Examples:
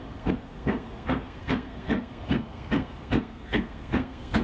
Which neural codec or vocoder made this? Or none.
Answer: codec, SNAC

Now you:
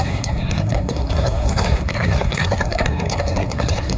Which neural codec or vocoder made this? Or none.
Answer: codec, SNAC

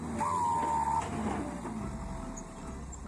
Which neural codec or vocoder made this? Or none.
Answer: none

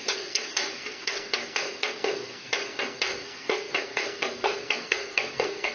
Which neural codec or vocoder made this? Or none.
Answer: codec, SNAC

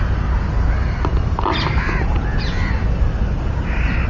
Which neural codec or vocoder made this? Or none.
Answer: none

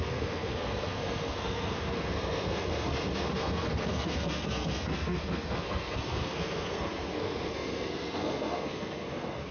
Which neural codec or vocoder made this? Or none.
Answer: codec, SNAC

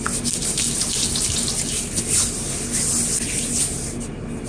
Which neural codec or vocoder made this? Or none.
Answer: none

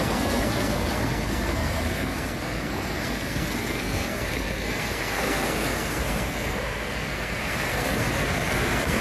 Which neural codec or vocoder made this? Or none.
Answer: codec, SNAC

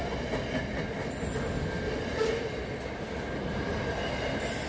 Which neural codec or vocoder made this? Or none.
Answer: none